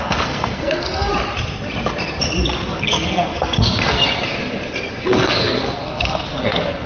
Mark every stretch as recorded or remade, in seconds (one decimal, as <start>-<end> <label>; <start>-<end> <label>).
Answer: 0.0-1.1 remade; 1.1-2.8 recorded; 2.8-4.0 remade; 4.0-4.9 recorded; 4.9-6.9 remade